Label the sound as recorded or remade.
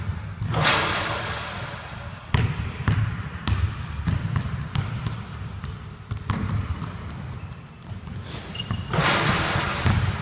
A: recorded